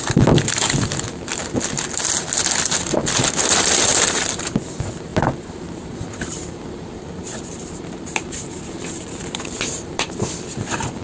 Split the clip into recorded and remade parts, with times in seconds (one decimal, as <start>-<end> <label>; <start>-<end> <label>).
0.0-3.9 recorded; 3.9-4.5 remade; 4.5-5.1 recorded; 5.1-10.2 remade; 10.2-11.0 recorded